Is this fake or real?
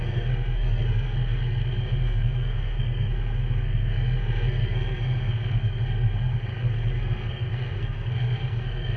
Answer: fake